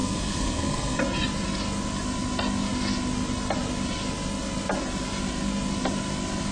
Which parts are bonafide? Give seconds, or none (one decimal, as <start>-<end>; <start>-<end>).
1.0-6.5